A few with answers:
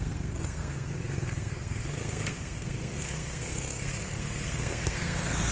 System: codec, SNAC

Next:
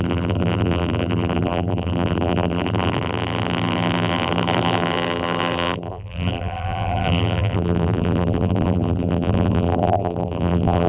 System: vocoder, BigVGAN v2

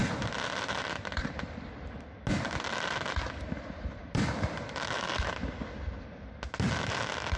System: none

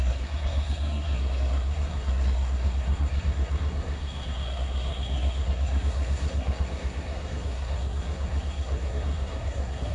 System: codec, SNAC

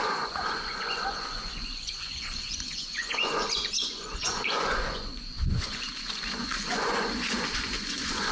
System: vocoder, Vocos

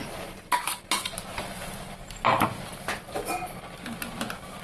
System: none